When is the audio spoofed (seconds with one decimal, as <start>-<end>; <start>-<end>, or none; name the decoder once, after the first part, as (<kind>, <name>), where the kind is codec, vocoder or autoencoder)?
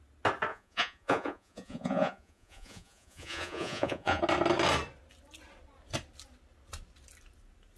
0.5-4.2 (vocoder, Vocos)